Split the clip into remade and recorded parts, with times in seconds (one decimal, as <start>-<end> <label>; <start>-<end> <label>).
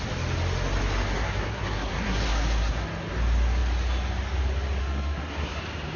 0.0-1.1 recorded; 1.1-2.8 remade; 2.8-4.8 recorded; 4.8-5.6 remade; 5.6-6.0 recorded